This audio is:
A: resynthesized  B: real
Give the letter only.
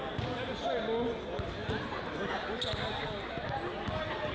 B